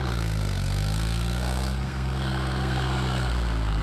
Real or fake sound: fake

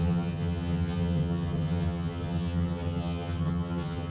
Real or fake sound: fake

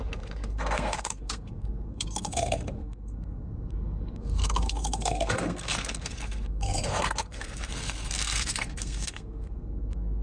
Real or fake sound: fake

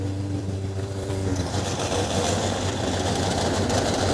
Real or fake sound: fake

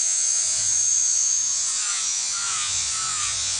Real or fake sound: fake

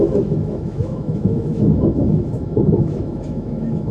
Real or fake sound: fake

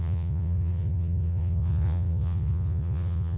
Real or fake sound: fake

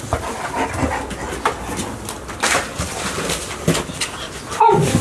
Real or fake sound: real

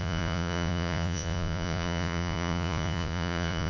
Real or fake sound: fake